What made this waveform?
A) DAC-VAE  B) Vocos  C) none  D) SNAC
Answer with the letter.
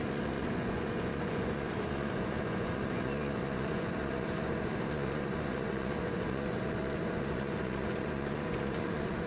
B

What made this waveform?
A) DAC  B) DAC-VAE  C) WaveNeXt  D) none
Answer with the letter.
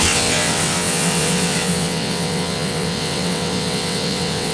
C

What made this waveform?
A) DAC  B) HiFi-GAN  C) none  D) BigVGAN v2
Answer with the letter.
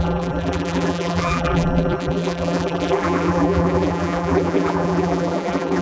D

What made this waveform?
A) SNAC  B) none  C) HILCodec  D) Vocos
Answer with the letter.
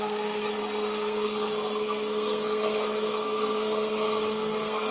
A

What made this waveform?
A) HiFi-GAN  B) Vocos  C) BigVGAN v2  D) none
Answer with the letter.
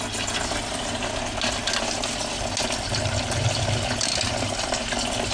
D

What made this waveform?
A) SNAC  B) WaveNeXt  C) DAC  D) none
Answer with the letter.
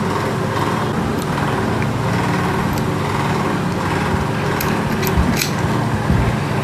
D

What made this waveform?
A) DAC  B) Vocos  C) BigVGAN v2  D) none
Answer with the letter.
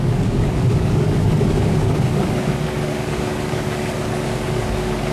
A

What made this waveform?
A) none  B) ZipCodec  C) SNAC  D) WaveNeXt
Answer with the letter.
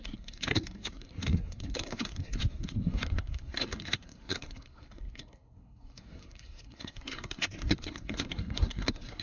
C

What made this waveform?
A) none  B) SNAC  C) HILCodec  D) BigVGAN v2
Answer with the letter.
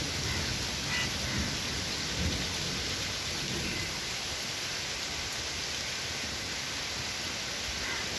A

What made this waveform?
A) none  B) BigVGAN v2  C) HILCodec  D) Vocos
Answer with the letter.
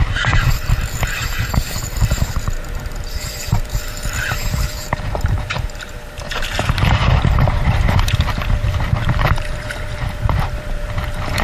B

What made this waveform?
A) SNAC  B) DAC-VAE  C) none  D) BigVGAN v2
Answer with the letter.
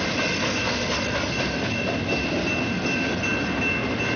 C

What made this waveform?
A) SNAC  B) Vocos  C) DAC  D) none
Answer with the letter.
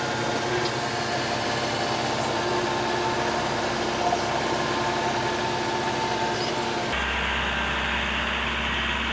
D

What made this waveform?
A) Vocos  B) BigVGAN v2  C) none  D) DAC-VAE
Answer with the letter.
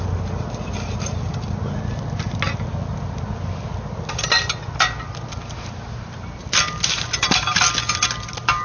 C